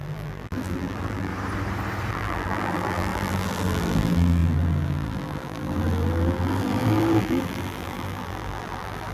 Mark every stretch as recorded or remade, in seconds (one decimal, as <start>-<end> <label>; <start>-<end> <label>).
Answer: 0.0-1.3 remade; 1.3-2.1 recorded; 2.1-9.1 remade